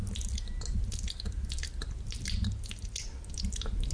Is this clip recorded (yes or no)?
yes